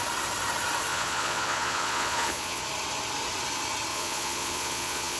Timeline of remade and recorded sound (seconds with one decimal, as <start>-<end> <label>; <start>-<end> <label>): 0.0-0.9 recorded; 0.9-2.6 remade; 2.6-3.9 recorded; 3.9-5.2 remade

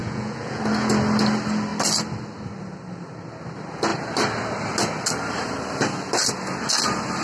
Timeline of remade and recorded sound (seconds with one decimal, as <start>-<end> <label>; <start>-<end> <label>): 0.0-0.6 remade; 0.6-7.2 recorded